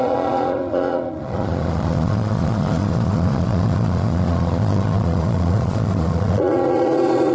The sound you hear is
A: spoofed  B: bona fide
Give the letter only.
A